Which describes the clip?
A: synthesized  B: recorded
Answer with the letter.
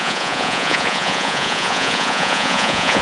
A